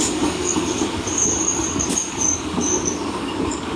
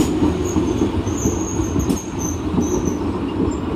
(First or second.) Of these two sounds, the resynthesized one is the first